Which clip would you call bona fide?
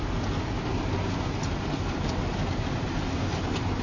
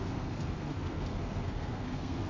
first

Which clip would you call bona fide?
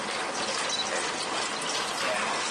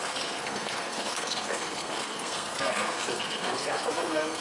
first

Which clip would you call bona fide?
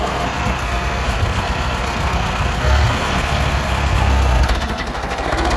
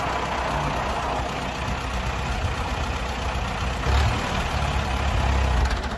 second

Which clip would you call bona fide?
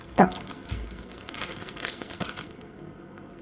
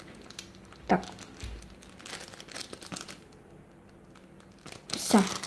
second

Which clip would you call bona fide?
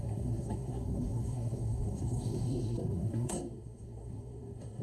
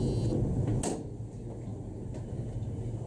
second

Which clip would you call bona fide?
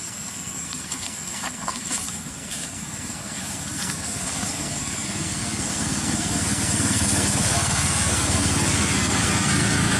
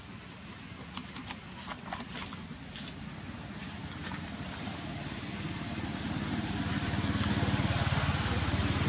second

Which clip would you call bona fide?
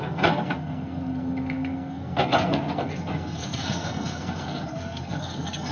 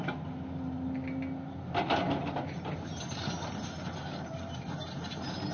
second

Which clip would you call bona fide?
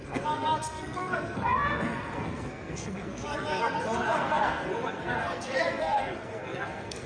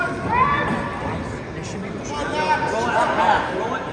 second